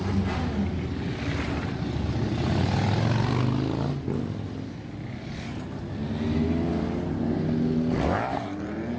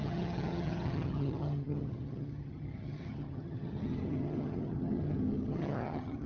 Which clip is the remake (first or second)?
second